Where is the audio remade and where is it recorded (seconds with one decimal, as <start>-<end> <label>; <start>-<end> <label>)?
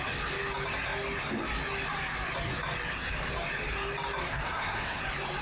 0.0-4.3 recorded; 4.3-5.0 remade; 5.0-5.4 recorded